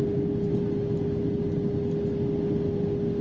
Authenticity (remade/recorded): recorded